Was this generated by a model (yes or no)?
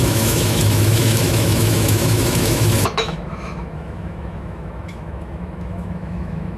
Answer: yes